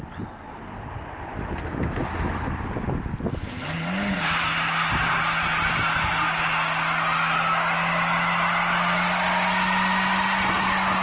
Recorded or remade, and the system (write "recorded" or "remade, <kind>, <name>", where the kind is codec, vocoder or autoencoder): recorded